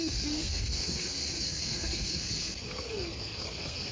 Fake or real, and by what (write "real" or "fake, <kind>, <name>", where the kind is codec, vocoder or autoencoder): fake, codec, SNAC